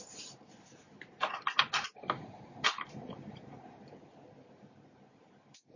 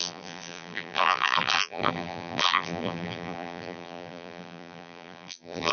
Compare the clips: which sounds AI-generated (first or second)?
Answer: second